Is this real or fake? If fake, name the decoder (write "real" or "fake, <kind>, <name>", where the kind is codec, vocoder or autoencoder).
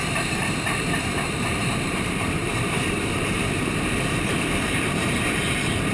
fake, vocoder, BigVGAN v2